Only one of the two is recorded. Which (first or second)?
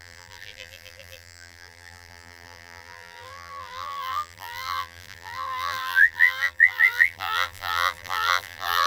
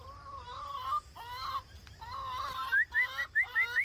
second